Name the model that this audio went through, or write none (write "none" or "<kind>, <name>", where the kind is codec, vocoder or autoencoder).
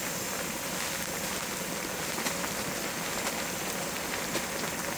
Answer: none